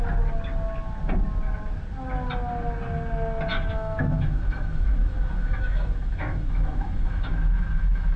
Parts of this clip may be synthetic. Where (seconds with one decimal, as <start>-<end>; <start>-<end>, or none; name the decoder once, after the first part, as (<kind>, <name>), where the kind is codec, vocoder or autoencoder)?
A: 3.5-8.2 (autoencoder, DAC-VAE)